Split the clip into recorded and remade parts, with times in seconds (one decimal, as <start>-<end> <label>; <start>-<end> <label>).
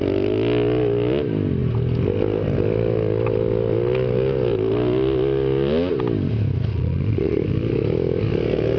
0.0-6.7 recorded; 6.7-7.4 remade; 7.4-8.8 recorded